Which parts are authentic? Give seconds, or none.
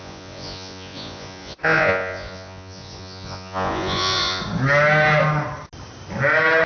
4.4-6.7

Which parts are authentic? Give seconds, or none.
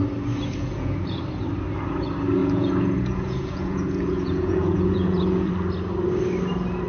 0.0-0.6; 1.2-2.4; 5.5-6.9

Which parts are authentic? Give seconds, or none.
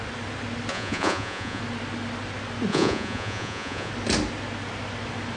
0.0-0.7; 1.6-2.7; 3.9-5.4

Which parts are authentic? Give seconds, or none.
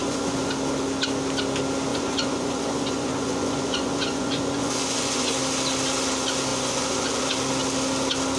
0.5-1.9; 5.3-6.5; 7.2-8.4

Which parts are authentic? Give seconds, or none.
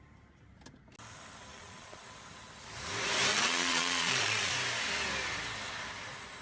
0.0-1.5; 2.1-3.3; 4.5-6.4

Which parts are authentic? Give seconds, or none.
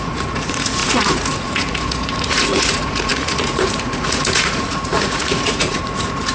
none